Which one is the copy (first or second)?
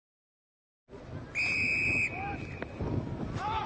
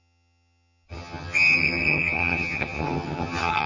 second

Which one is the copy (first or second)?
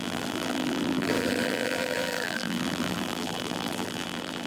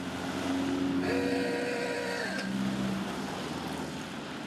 first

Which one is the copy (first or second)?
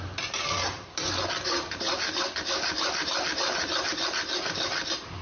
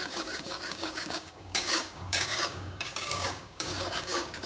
second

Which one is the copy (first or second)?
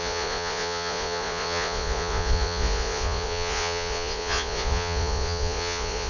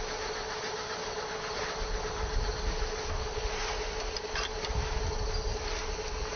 first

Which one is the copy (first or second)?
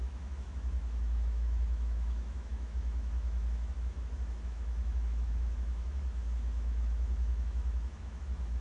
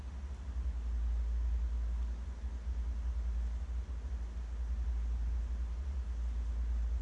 first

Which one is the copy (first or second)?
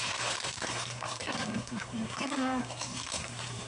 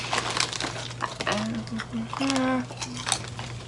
first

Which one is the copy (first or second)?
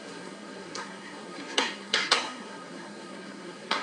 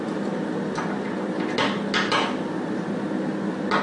first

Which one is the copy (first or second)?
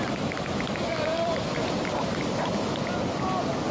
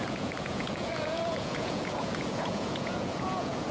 second